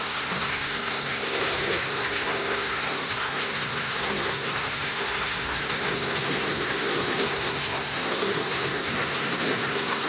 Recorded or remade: remade